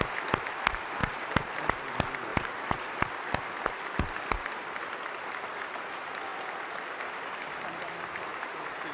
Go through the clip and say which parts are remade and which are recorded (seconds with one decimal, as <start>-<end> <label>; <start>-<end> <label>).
0.0-1.0 recorded; 1.0-1.9 remade; 1.9-2.3 recorded; 2.3-3.0 remade; 3.0-8.9 recorded